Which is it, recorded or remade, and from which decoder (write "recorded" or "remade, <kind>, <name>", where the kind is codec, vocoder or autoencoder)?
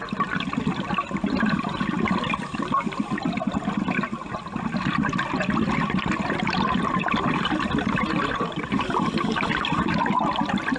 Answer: recorded